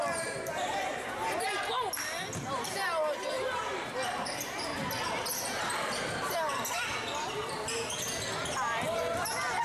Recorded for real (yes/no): yes